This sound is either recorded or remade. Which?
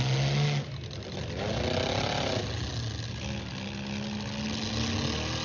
recorded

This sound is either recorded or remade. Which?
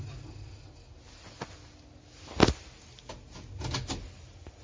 recorded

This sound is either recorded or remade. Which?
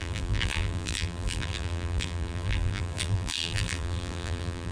remade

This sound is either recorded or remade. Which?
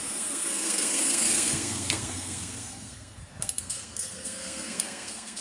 remade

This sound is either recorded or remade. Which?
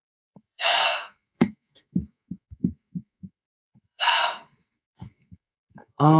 remade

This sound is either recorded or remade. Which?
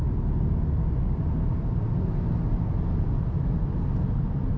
recorded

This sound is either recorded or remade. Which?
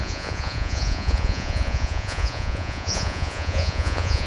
remade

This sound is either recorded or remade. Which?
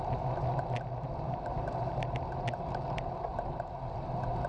recorded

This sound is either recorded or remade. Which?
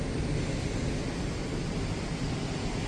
recorded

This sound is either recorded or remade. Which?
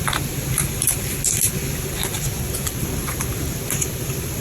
remade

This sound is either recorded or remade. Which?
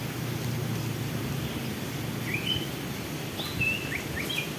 recorded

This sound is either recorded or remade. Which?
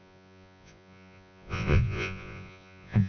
remade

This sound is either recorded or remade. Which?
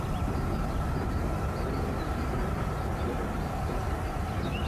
recorded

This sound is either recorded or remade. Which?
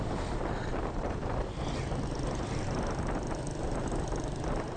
recorded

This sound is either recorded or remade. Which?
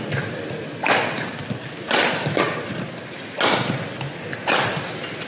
recorded